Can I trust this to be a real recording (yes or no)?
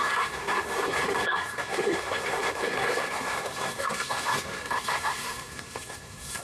no